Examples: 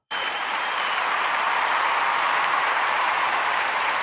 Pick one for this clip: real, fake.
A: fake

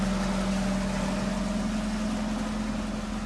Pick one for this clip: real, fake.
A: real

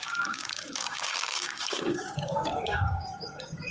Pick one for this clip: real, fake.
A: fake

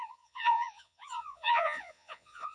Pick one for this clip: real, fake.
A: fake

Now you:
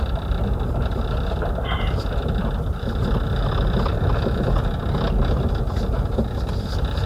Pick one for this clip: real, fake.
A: real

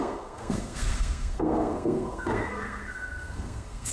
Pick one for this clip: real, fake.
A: fake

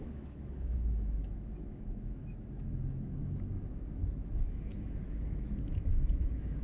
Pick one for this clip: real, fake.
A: fake